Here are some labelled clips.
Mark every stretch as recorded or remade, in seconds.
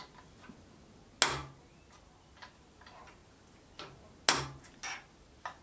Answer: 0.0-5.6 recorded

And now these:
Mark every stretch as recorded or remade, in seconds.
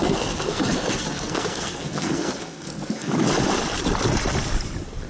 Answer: 0.0-3.1 remade; 3.1-5.1 recorded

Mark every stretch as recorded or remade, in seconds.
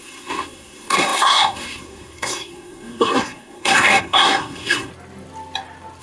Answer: 0.0-4.9 remade; 4.9-6.0 recorded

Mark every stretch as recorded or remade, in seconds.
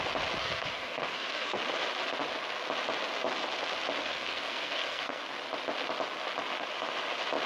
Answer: 0.0-0.4 recorded; 0.4-1.6 remade; 1.6-4.0 recorded; 4.0-5.3 remade; 5.3-7.5 recorded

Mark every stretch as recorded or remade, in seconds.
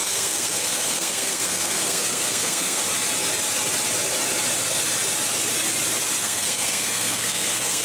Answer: 0.0-2.8 remade; 2.8-6.2 recorded; 6.2-7.8 remade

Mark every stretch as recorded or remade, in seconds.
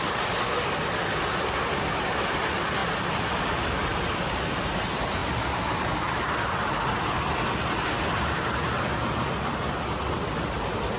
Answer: 0.0-11.0 recorded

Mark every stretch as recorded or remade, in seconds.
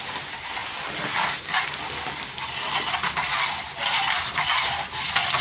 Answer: 0.0-5.4 recorded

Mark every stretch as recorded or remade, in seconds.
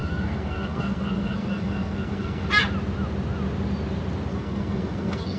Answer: 0.0-2.5 remade; 2.5-4.3 recorded; 4.3-5.4 remade